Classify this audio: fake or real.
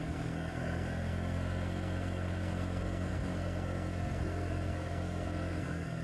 fake